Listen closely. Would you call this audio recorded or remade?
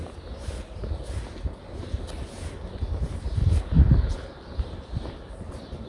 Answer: recorded